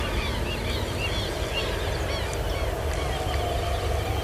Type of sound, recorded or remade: recorded